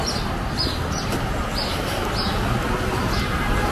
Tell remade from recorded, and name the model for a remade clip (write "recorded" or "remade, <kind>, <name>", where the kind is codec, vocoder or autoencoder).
recorded